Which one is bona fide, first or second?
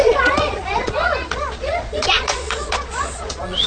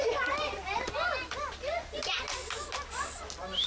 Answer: second